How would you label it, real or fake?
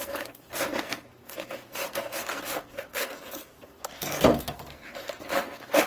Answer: fake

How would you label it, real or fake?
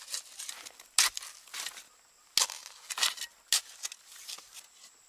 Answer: real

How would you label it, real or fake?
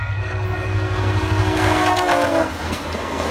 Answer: fake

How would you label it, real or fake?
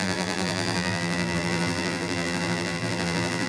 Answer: fake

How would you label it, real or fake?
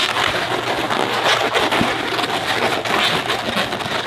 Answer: real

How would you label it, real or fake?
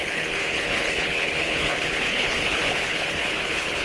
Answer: fake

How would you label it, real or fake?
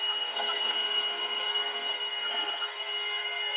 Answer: fake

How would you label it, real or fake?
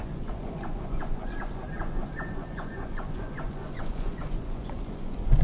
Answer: fake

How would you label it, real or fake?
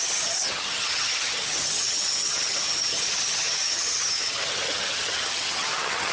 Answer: fake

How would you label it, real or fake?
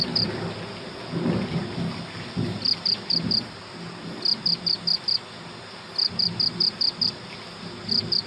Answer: real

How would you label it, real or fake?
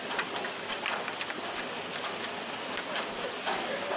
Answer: real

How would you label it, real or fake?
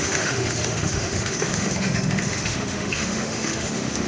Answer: fake